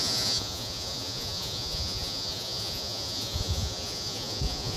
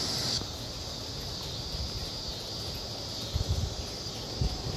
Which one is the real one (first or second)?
second